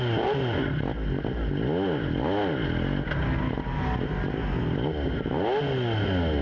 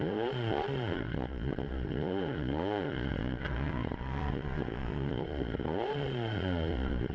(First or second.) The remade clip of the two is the second